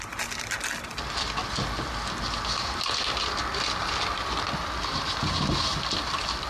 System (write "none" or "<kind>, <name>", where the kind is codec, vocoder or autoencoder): none